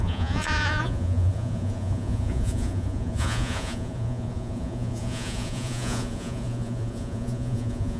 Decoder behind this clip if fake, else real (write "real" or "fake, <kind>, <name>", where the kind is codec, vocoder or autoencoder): fake, vocoder, Vocos